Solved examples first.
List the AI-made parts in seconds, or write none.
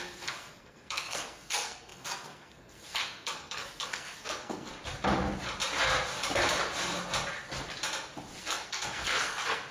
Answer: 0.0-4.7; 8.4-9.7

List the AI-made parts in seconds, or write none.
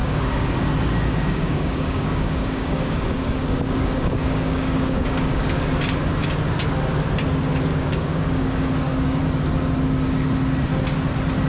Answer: 0.0-0.5; 1.0-5.8; 7.7-9.2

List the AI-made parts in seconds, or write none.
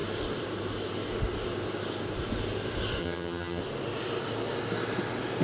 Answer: 3.0-3.6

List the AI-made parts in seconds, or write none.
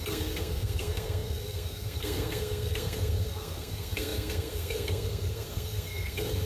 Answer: 0.0-6.5